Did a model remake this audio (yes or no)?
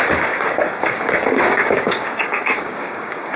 yes